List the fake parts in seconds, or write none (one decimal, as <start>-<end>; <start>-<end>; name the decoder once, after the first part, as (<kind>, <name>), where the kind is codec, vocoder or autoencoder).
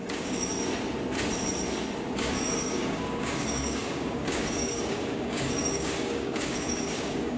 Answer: 0.0-0.5 (codec, DAC); 2.1-7.4